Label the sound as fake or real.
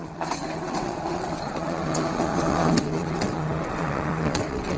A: fake